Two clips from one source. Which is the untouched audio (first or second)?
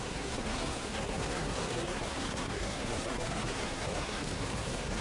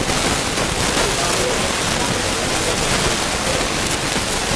second